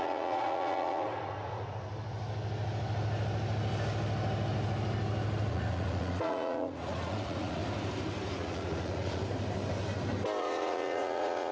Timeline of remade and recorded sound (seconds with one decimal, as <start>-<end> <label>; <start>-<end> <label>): 0.0-1.9 remade; 1.9-5.5 recorded; 5.5-7.6 remade; 7.6-8.3 recorded; 8.3-9.2 remade; 9.2-10.4 recorded; 10.4-11.5 remade